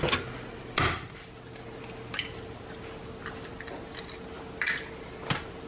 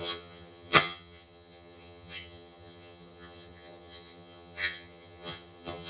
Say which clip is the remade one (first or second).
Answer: second